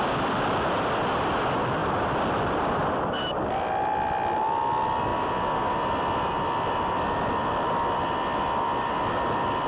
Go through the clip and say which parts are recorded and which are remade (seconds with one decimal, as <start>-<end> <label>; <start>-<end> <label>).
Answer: 0.0-1.8 recorded; 1.8-3.5 remade; 3.5-9.7 recorded